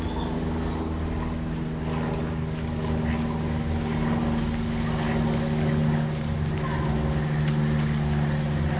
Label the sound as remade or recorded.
recorded